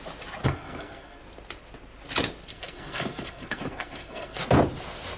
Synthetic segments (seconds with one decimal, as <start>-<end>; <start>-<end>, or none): 0.4-1.2; 2.5-4.4